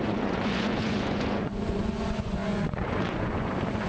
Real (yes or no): no